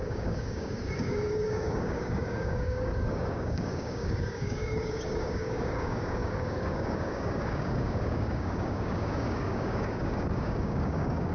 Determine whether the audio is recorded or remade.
remade